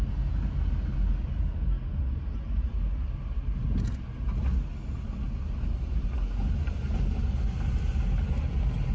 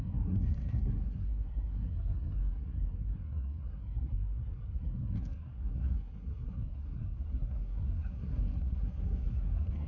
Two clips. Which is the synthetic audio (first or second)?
second